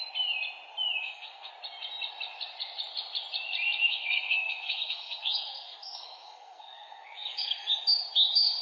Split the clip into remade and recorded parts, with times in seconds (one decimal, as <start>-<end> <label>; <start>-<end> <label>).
0.0-1.0 recorded; 1.0-1.5 remade; 1.5-3.9 recorded; 3.9-7.7 remade; 7.7-8.6 recorded